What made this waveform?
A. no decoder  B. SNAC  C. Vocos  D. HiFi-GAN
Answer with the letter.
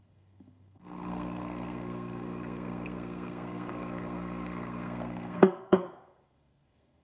B